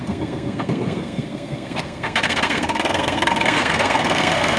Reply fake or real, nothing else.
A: fake